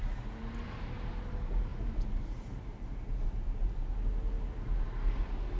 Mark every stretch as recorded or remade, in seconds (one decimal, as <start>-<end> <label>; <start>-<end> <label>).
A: 0.0-5.6 recorded